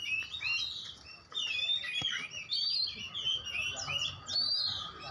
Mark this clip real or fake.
real